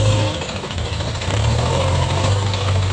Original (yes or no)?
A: no